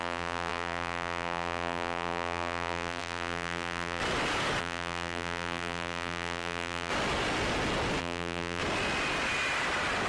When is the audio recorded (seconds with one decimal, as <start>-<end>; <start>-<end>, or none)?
4.0-4.6; 6.9-8.0; 8.6-10.1